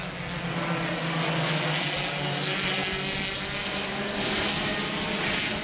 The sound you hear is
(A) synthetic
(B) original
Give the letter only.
B